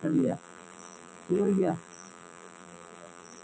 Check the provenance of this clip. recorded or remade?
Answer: remade